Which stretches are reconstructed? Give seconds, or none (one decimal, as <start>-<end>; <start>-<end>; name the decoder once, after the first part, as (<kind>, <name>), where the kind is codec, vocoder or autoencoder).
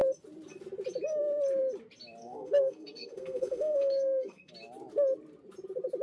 2.2-4.5 (codec, SNAC)